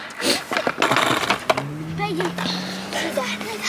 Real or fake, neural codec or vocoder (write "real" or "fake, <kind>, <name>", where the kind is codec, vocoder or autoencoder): real